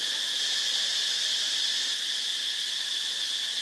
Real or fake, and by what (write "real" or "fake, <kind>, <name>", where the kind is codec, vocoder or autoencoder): real